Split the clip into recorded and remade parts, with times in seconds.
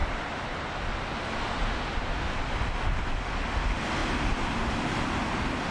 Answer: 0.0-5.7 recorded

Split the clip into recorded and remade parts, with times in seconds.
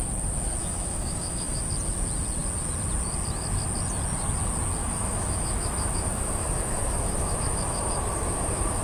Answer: 0.0-0.6 recorded; 0.6-1.6 remade; 1.6-4.8 recorded; 4.8-8.8 remade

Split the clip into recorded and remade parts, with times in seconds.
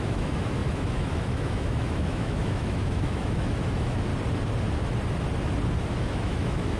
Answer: 0.0-4.1 remade; 4.1-6.0 recorded; 6.0-6.8 remade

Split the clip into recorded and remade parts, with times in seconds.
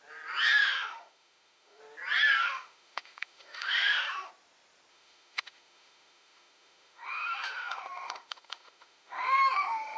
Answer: 0.0-0.6 recorded; 0.6-1.8 remade; 1.8-2.4 recorded; 2.4-4.3 remade; 4.3-4.9 recorded; 4.9-10.0 remade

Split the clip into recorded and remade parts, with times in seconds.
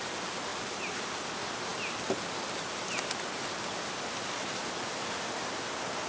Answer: 0.0-6.1 recorded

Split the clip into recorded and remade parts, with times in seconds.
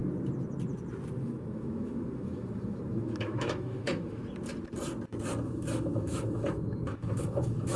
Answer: 0.0-1.1 recorded; 1.1-4.2 remade; 4.2-5.4 recorded; 5.4-7.8 remade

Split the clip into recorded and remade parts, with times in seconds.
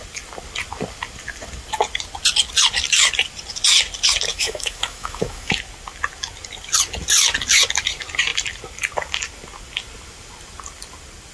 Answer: 0.0-4.3 recorded; 4.3-5.5 remade; 5.5-11.3 recorded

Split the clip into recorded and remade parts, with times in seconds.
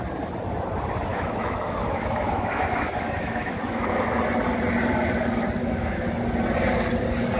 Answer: 0.0-1.1 recorded; 1.1-4.2 remade; 4.2-5.6 recorded; 5.6-6.1 remade; 6.1-7.4 recorded